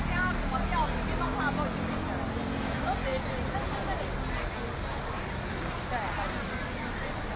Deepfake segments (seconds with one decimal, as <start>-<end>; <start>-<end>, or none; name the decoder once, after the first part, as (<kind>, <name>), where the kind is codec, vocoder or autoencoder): none